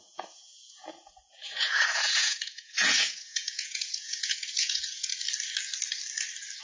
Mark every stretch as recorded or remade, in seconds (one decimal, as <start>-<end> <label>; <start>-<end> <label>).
0.0-5.1 remade; 5.1-6.6 recorded

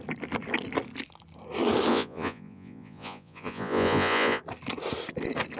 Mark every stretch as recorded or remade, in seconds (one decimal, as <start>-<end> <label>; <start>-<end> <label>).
0.0-1.9 recorded; 1.9-4.4 remade; 4.4-5.6 recorded

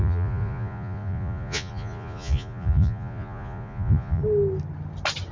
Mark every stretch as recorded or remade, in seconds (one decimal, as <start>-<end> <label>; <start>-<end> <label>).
0.0-4.2 remade; 4.2-5.3 recorded

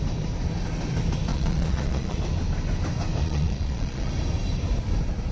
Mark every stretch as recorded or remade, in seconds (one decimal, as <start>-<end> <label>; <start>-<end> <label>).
0.0-1.3 recorded; 1.3-2.2 remade; 2.2-3.2 recorded; 3.2-4.1 remade; 4.1-5.3 recorded

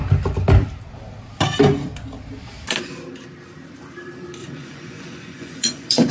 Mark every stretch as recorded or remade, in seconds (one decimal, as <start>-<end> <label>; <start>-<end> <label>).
0.0-4.4 recorded; 4.4-6.1 remade

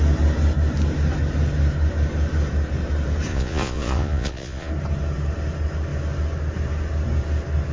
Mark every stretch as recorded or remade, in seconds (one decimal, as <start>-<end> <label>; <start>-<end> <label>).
0.0-3.3 recorded; 3.3-4.7 remade; 4.7-7.7 recorded

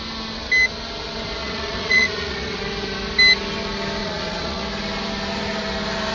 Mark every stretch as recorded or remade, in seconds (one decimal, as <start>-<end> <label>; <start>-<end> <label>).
0.0-1.4 recorded; 1.4-2.6 remade; 2.6-4.0 recorded; 4.0-4.6 remade; 4.6-6.1 recorded

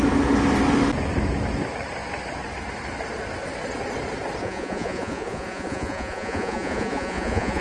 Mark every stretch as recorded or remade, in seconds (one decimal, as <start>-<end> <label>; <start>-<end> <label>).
0.0-4.4 recorded; 4.4-7.6 remade